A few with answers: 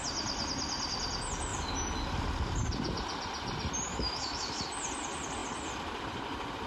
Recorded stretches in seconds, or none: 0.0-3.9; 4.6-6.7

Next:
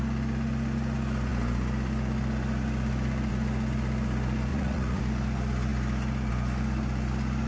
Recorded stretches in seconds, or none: 0.0-4.5; 5.0-7.5

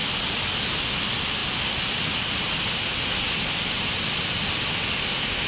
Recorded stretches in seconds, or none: 0.0-5.5